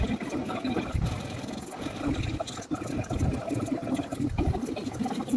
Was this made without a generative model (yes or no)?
yes